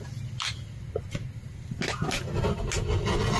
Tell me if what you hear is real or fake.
real